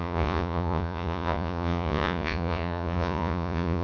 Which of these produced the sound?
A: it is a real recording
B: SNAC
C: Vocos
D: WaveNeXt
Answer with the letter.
C